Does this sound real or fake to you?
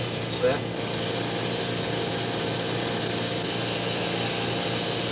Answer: real